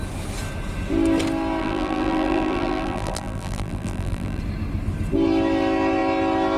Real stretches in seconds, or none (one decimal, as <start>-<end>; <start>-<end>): 0.0-1.6; 4.4-6.6